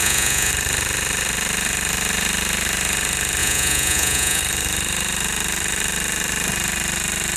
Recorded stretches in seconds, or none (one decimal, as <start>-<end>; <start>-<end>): 0.5-3.4; 4.4-7.4